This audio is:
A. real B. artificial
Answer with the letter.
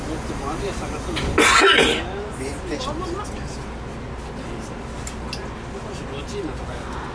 A